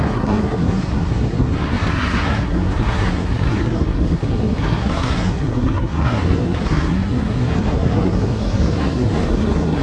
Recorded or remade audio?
remade